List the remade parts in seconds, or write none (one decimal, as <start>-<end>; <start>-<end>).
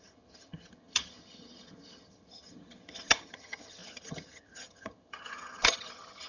0.0-6.3